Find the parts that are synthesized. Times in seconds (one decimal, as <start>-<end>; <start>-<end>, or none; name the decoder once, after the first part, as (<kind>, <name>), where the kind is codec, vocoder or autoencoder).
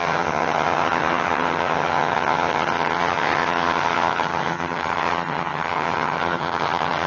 0.0-7.1 (vocoder, HiFi-GAN)